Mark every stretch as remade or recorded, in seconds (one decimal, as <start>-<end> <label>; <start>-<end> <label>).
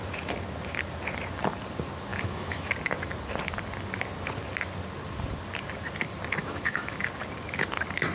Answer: 0.0-2.1 recorded; 2.1-2.7 remade; 2.7-6.4 recorded; 6.4-7.0 remade; 7.0-8.1 recorded